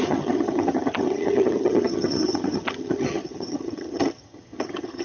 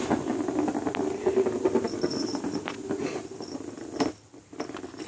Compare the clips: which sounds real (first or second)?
second